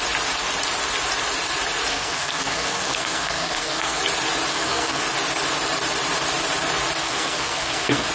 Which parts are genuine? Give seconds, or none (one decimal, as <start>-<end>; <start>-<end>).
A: 0.0-1.9; 4.0-4.5; 5.0-7.0